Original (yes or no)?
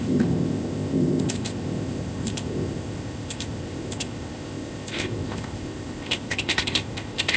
no